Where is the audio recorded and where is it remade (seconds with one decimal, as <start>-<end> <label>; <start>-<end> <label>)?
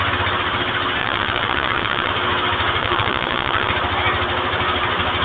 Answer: 0.0-1.0 recorded; 1.0-2.1 remade; 2.1-2.8 recorded; 2.8-3.7 remade; 3.7-5.2 recorded